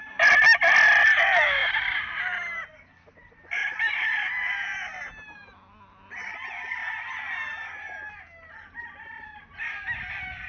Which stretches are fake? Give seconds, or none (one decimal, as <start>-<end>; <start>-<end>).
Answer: none